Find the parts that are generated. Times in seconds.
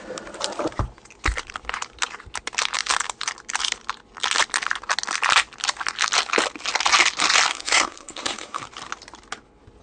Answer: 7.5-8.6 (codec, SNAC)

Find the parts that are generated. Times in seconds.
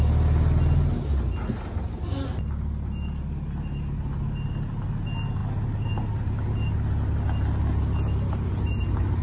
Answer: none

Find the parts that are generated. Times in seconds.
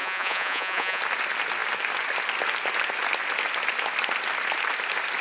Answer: 0.0-1.0 (vocoder, Vocos)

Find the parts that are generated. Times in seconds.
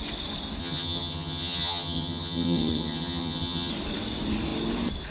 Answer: 0.6-3.7 (vocoder, HiFi-GAN)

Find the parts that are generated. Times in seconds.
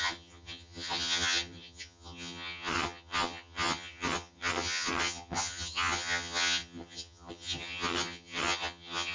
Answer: 0.0-9.1 (vocoder, HiFi-GAN)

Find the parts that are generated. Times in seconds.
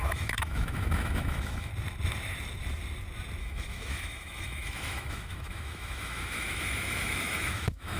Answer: 0.0-1.7 (autoencoder, DAC-VAE); 3.4-8.0